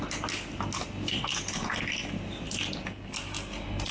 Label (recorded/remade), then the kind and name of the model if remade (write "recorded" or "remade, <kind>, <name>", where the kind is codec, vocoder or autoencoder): recorded